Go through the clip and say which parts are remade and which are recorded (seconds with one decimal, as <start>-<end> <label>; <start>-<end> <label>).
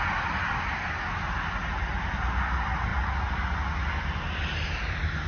0.0-5.3 recorded